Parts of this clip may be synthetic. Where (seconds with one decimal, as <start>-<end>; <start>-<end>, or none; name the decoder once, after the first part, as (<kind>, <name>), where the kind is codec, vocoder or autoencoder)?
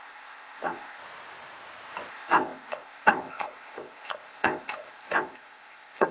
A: 0.0-1.0 (codec, ZipCodec); 2.1-6.1